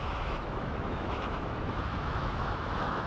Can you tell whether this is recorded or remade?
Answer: remade